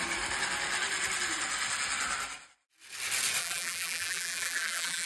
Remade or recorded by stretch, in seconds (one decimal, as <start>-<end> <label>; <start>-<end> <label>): 0.0-3.4 recorded; 3.4-5.1 remade